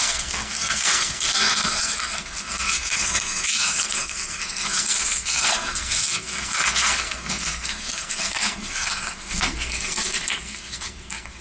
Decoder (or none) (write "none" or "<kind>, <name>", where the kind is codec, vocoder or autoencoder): codec, SNAC